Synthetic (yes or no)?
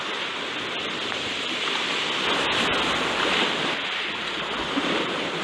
no